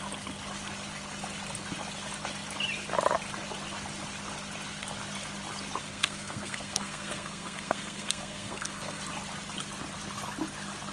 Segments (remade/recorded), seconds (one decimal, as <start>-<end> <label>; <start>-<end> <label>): 0.0-5.8 recorded; 5.8-9.0 remade; 9.0-10.9 recorded